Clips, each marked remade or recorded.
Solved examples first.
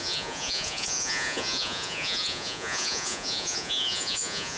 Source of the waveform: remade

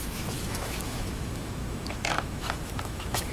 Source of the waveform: remade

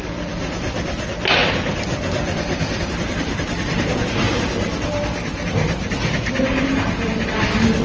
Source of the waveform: recorded